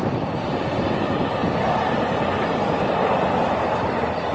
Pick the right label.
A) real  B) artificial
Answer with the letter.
A